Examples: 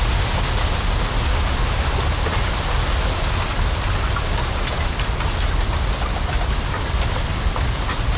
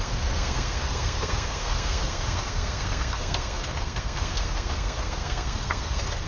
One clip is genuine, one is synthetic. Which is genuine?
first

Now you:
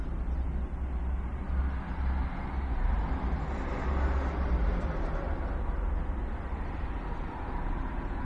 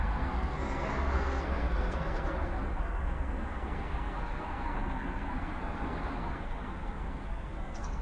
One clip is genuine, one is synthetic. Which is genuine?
first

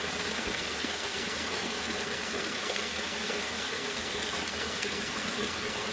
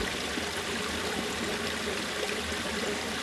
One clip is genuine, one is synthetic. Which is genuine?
second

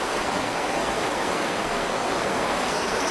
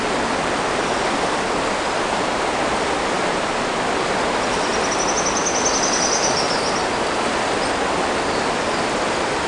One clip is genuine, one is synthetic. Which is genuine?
second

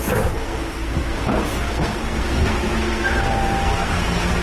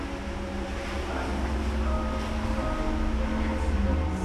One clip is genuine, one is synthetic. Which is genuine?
second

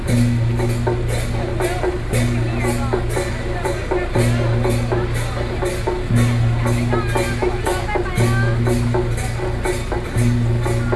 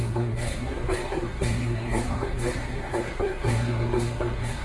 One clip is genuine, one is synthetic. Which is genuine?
first